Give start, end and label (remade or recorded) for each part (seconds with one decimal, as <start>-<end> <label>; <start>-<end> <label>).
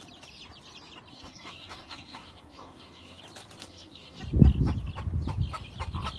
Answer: 0.0-1.1 recorded; 1.1-3.2 remade; 3.2-3.6 recorded; 3.6-4.2 remade; 4.2-6.2 recorded